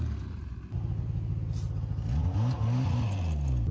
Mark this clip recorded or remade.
recorded